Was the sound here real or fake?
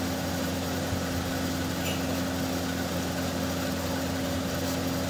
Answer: real